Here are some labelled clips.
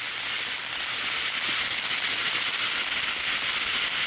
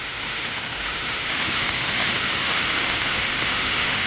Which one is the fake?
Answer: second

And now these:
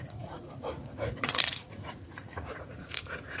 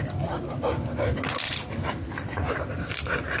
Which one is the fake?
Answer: first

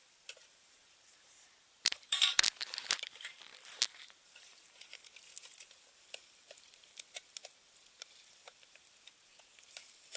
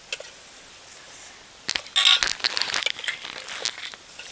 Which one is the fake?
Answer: first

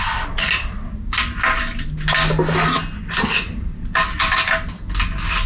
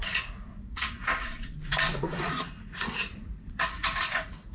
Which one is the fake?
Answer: second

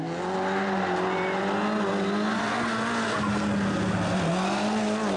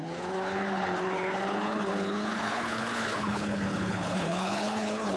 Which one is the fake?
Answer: second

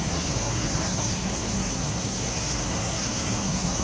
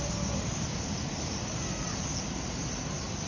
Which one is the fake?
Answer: first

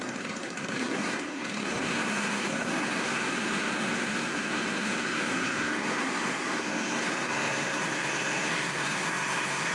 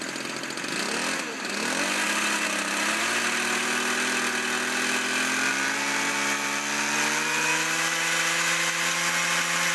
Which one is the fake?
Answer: first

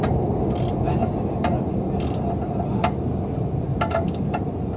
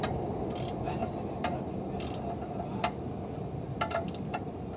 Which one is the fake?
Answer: second